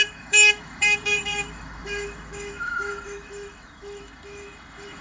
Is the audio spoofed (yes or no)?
yes